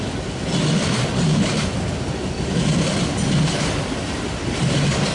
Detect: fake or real real